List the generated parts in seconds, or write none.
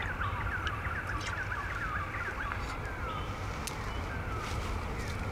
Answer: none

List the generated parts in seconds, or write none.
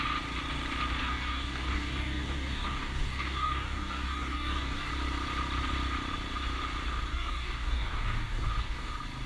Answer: 1.0-4.9; 7.1-8.9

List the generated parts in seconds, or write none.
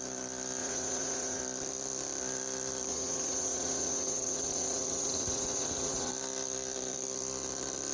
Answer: 0.6-1.4; 2.9-6.1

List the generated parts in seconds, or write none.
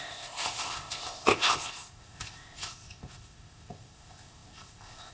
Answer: 0.0-5.1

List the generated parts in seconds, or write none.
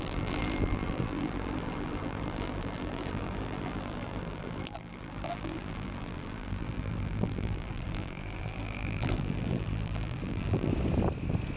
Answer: 0.0-10.7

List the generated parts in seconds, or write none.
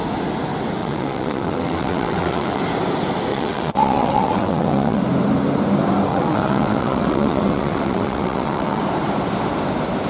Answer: 0.8-2.6; 3.3-5.0; 6.1-8.8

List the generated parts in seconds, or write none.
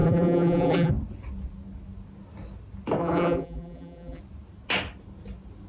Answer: 0.0-0.9; 3.0-4.2